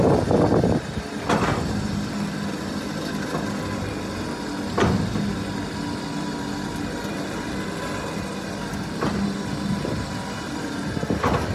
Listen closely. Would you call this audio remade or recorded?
recorded